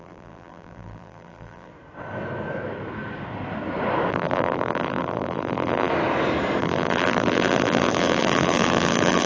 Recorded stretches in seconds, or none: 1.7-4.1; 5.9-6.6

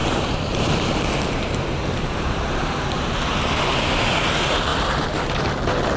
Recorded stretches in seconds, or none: 3.1-4.7; 5.5-6.0

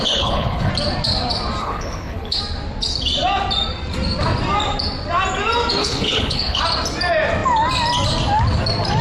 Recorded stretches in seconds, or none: 0.7-1.6; 2.4-5.8; 6.6-9.0

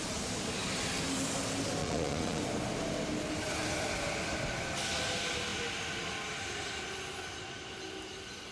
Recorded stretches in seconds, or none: 0.0-1.8; 2.4-8.5

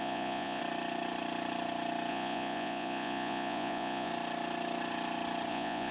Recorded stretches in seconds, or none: 0.6-2.1; 4.1-5.5

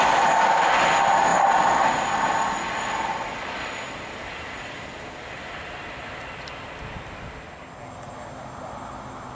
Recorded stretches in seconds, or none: 0.0-9.3